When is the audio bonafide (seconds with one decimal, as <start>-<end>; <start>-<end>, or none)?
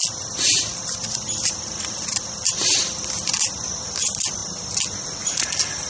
0.0-0.7; 2.6-5.9